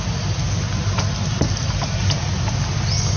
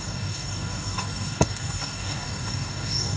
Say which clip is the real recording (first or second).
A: first